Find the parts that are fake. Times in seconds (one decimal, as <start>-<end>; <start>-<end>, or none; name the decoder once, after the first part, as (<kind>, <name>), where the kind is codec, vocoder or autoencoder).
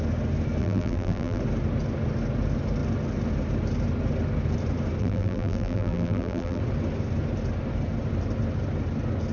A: 0.6-1.4 (vocoder, BigVGAN v2); 5.0-6.6